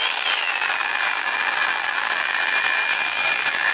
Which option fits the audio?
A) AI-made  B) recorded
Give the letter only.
A